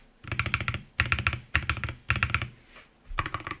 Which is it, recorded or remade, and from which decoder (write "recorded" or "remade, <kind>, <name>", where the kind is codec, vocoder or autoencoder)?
recorded